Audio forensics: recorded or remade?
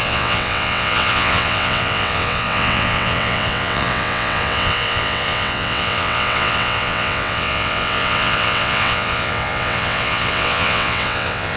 remade